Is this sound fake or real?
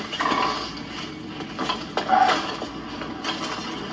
real